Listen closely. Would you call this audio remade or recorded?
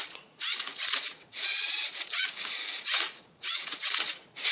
remade